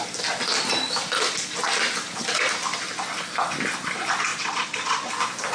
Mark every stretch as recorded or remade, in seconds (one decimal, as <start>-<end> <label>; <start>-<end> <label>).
0.0-4.3 recorded; 4.3-5.1 remade; 5.1-5.5 recorded